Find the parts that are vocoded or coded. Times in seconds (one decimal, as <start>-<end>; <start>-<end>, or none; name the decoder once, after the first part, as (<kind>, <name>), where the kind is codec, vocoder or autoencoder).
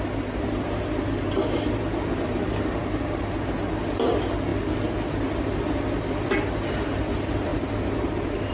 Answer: 0.0-4.5 (vocoder, BigVGAN v2); 6.7-8.5